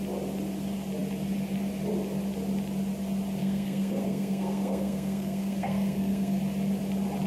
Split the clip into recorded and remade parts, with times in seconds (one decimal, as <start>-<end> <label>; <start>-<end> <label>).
0.0-3.4 recorded; 3.4-6.4 remade; 6.4-7.3 recorded